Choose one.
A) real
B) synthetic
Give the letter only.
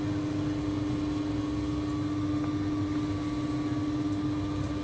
A